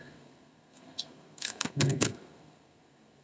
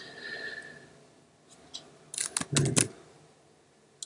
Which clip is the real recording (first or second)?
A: second